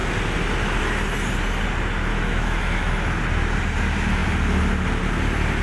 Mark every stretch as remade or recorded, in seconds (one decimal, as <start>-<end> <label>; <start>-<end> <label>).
0.0-2.1 recorded; 2.1-2.9 remade; 2.9-5.6 recorded